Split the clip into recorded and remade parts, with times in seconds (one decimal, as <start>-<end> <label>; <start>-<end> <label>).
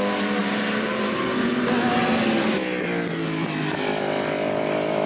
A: 0.0-0.4 recorded; 0.4-1.2 remade; 1.2-5.1 recorded